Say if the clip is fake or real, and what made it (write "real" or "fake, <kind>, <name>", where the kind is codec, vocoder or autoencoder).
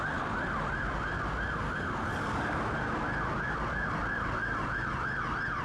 real